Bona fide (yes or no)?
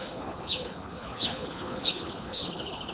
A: no